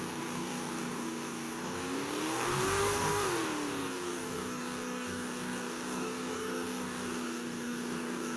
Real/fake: fake